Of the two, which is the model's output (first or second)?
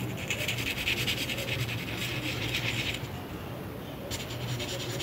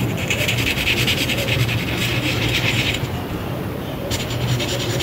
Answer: second